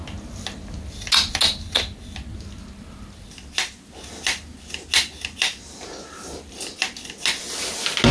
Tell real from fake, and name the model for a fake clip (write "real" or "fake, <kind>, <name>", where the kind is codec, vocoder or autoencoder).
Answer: real